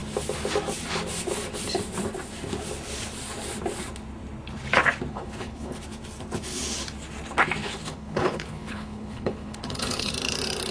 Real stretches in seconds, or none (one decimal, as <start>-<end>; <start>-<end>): 0.0-5.1; 5.8-7.6; 10.1-10.7